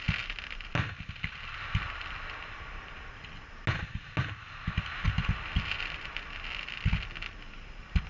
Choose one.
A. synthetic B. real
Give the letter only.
B